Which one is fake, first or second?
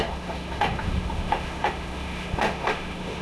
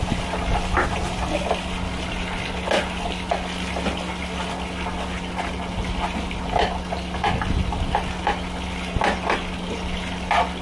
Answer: first